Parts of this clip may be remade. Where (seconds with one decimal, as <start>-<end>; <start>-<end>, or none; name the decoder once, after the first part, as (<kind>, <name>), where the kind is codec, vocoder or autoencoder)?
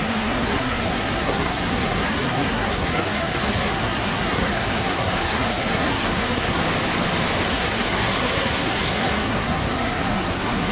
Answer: 0.0-6.6 (codec, SNAC); 7.5-10.7